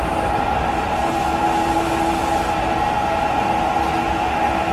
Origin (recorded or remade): recorded